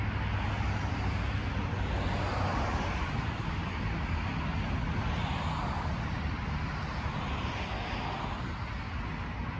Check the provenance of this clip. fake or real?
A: real